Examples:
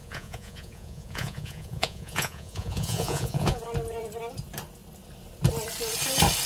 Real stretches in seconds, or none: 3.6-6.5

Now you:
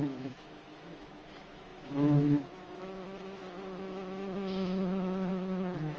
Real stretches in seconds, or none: none

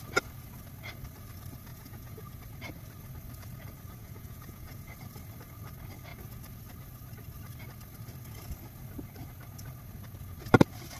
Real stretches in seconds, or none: 0.0-1.7; 2.4-4.0; 4.9-11.0

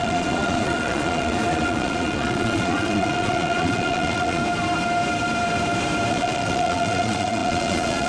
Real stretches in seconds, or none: 4.4-6.1